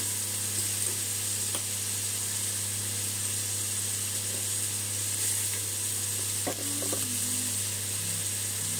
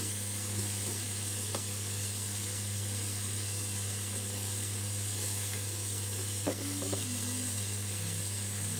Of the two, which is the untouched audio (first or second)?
first